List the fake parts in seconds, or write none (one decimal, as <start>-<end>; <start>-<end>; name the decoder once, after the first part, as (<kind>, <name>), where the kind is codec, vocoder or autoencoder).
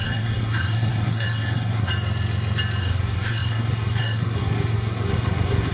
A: 0.0-1.9 (codec, SNAC); 2.8-5.7